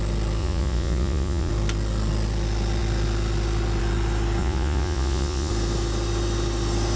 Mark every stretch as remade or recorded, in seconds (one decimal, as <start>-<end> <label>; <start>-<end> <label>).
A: 0.0-0.4 recorded; 0.4-1.5 remade; 1.5-4.4 recorded; 4.4-5.5 remade; 5.5-7.0 recorded

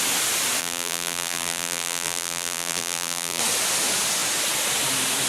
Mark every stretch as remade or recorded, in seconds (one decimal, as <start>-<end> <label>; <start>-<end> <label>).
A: 0.0-0.6 recorded; 0.6-3.4 remade; 3.4-5.3 recorded

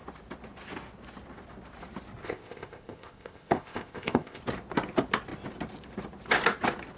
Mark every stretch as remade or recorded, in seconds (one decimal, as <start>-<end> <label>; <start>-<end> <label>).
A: 0.0-2.2 recorded; 2.2-4.4 remade; 4.4-7.0 recorded

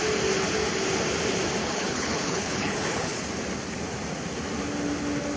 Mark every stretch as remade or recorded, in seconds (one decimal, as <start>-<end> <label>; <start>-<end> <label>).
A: 0.0-1.6 recorded; 1.6-3.2 remade; 3.2-5.4 recorded